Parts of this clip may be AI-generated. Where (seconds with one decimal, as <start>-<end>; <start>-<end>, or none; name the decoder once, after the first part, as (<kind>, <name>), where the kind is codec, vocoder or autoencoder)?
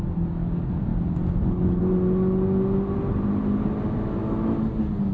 none